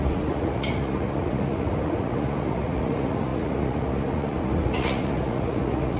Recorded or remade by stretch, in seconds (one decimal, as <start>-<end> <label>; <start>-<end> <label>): 0.0-6.0 remade